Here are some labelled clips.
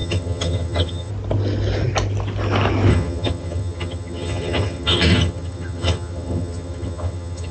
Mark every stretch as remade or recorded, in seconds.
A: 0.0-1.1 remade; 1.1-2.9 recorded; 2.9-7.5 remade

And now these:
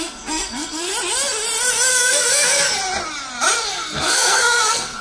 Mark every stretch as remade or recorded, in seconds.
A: 0.0-0.9 remade; 0.9-1.9 recorded; 1.9-2.8 remade; 2.8-3.7 recorded; 3.7-5.0 remade

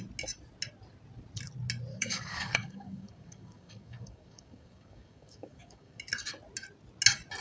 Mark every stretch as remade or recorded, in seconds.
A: 0.0-1.9 recorded; 1.9-6.0 remade; 6.0-7.4 recorded